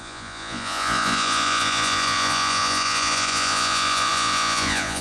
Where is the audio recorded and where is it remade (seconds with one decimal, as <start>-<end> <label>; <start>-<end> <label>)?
0.0-5.0 remade